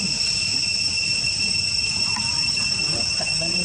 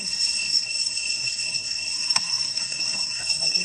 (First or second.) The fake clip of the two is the second